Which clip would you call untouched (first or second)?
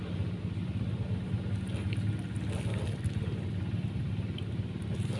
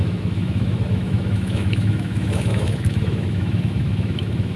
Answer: first